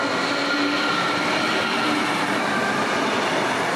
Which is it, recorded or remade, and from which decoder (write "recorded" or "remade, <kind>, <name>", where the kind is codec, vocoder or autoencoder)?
recorded